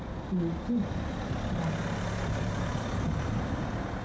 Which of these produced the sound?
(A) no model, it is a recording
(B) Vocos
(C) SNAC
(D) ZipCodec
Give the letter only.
A